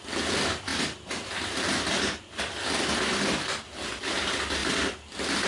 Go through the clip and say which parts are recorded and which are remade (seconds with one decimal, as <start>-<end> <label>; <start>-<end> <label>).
0.0-5.5 recorded